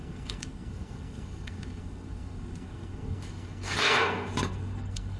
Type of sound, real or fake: fake